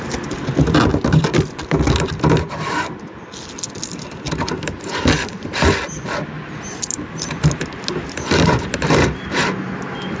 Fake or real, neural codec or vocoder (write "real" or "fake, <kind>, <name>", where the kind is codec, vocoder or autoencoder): real